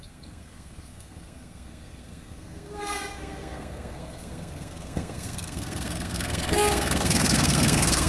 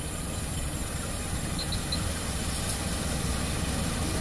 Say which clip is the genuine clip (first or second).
second